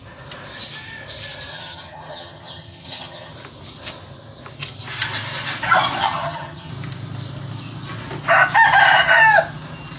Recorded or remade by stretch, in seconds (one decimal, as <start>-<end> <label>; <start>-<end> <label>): 0.0-1.5 recorded; 1.5-3.3 remade; 3.3-6.0 recorded; 6.0-6.7 remade; 6.7-10.0 recorded